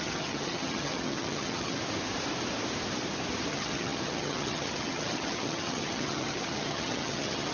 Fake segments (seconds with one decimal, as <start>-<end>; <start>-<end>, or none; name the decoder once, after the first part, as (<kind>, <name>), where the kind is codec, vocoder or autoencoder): 0.0-1.8 (vocoder, HiFi-GAN); 3.5-7.5